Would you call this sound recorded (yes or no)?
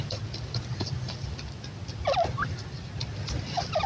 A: yes